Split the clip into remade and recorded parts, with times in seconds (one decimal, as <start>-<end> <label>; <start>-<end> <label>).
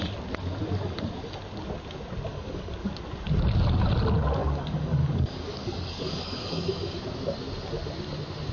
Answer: 0.0-2.3 recorded; 2.3-2.9 remade; 2.9-4.4 recorded; 4.4-6.7 remade; 6.7-8.5 recorded